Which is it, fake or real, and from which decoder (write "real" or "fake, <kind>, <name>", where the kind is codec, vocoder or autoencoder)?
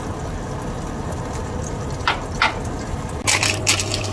real